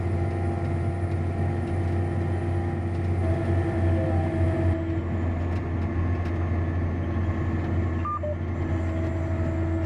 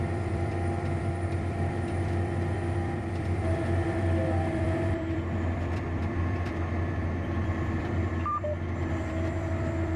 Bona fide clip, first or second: first